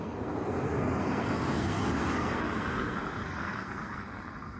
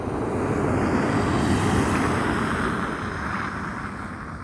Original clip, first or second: second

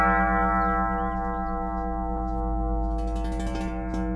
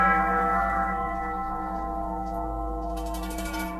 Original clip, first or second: first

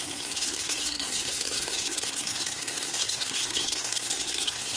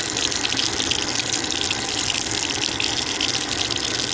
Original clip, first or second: second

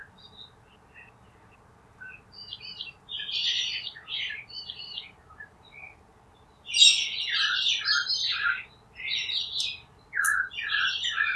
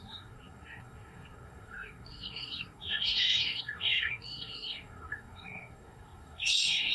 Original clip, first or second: first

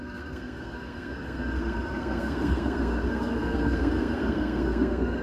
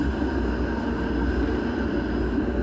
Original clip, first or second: second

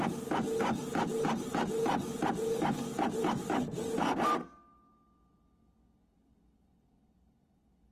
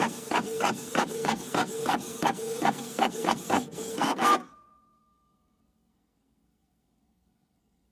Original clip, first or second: first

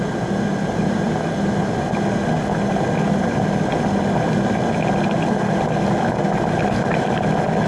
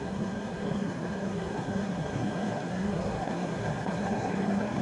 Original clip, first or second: first